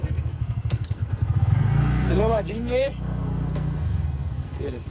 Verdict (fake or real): fake